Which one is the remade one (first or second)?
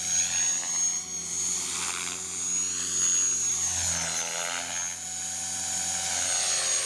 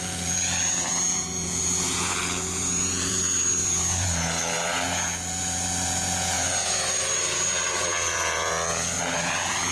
second